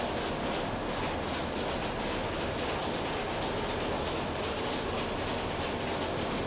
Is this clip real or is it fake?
real